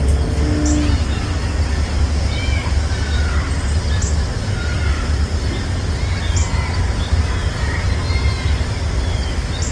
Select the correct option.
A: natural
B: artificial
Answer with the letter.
A